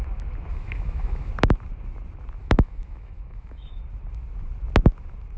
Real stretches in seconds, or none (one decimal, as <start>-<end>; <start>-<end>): 0.0-0.5; 1.3-2.4; 3.8-5.4